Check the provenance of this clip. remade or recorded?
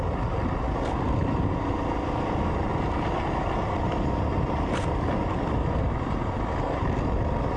recorded